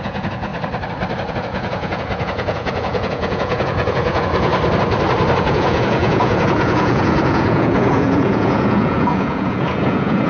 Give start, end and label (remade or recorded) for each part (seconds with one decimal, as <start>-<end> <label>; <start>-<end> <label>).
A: 0.0-0.5 remade; 0.5-1.3 recorded; 1.3-4.5 remade; 4.5-5.4 recorded; 5.4-10.3 remade